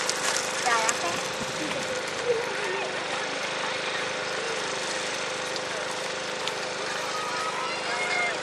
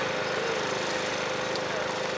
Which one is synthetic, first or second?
first